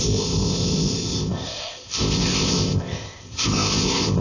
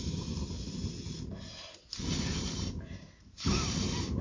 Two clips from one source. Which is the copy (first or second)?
first